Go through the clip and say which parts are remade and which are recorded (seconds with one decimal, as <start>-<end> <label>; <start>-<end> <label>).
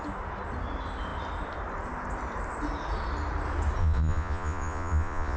0.0-3.8 recorded; 3.8-5.4 remade